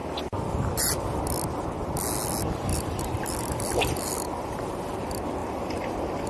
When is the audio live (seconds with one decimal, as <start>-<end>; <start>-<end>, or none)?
0.0-2.7; 4.9-5.4